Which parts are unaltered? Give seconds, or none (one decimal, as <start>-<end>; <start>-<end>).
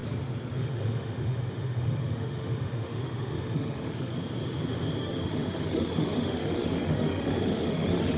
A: 0.0-0.6; 4.1-5.0